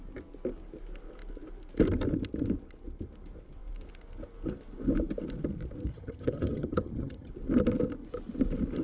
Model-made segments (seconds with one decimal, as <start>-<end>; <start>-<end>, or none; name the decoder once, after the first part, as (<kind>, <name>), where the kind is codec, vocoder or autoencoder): 5.9-7.3 (vocoder, HiFi-GAN)